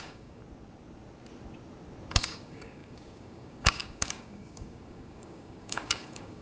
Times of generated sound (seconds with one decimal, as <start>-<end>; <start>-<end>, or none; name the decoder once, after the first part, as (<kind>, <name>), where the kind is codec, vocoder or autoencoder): 0.0-0.4 (codec, DAC); 2.1-6.4